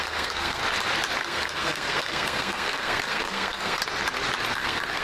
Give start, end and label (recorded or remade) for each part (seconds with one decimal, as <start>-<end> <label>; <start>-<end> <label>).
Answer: 0.0-0.6 remade; 0.6-1.2 recorded; 1.2-3.8 remade; 3.8-4.5 recorded; 4.5-5.0 remade